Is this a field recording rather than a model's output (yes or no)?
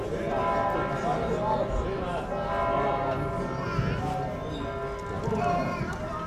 yes